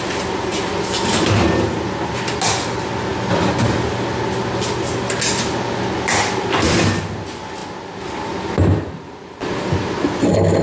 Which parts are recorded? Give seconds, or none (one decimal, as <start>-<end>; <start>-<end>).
0.0-10.6